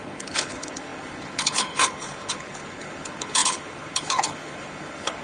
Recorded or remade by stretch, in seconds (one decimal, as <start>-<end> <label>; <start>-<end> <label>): 0.0-5.2 remade